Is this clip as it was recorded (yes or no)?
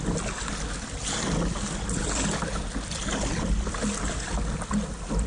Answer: yes